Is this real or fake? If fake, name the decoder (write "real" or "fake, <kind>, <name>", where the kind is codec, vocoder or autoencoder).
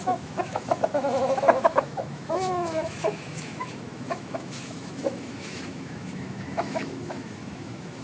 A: fake, autoencoder, DAC-VAE